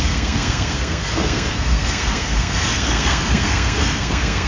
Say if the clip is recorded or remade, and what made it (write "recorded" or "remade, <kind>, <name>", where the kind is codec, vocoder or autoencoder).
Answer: remade, codec, SNAC